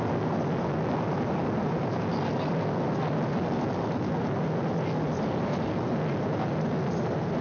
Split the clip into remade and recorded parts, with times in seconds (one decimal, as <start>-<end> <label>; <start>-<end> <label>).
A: 0.0-7.4 recorded